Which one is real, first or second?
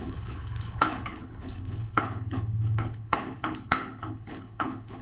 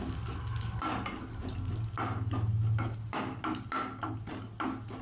second